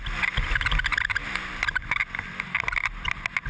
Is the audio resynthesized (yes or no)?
no